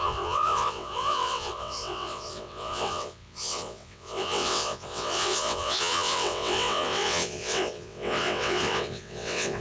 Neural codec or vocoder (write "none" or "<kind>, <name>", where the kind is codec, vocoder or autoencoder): vocoder, WaveNeXt